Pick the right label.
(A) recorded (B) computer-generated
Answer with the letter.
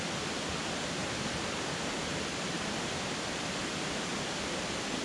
A